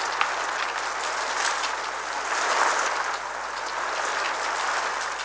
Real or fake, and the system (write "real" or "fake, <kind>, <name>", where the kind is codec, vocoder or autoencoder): real